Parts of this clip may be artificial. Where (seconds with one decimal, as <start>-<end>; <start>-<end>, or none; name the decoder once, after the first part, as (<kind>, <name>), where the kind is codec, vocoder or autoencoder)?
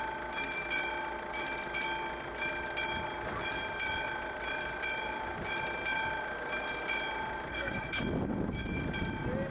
7.5-8.0 (codec, SNAC)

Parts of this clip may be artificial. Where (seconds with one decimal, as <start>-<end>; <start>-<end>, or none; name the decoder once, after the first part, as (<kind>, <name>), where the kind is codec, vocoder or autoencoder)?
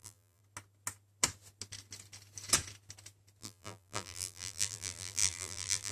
0.0-0.4 (vocoder, BigVGAN v2); 3.4-5.9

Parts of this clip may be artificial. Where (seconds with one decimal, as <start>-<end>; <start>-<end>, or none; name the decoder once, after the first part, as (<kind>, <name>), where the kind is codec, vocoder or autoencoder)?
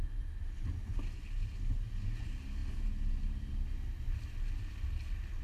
none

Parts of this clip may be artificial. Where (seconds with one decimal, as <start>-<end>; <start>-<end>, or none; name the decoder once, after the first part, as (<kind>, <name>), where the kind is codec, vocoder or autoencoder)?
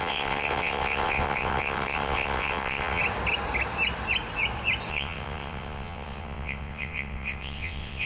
0.0-3.0 (vocoder, WaveNeXt); 4.9-8.1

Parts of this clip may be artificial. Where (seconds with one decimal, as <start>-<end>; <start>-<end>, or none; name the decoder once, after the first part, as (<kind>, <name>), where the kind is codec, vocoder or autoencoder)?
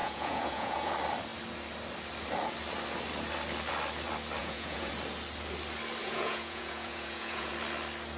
0.0-0.9 (vocoder, Vocos); 4.4-4.9; 6.0-7.5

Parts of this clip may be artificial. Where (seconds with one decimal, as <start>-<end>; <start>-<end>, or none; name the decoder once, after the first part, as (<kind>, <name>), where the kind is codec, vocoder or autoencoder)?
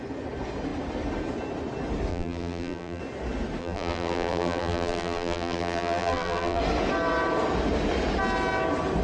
2.1-3.0 (vocoder, BigVGAN v2); 3.6-6.6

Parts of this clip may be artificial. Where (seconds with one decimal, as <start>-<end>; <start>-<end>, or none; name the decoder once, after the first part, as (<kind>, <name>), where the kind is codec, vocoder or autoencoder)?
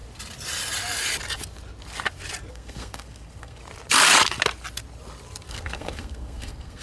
2.5-3.6 (codec, SNAC); 5.5-6.8